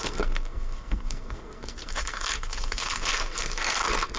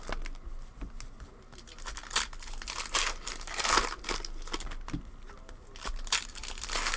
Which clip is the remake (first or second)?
first